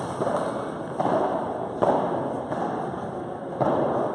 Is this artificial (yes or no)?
no